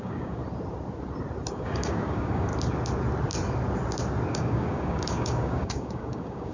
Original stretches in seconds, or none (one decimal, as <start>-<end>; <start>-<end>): 0.4-1.5; 2.5-4.3